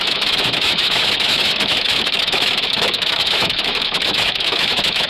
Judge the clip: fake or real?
fake